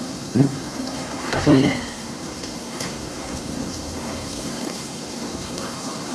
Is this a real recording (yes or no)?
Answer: no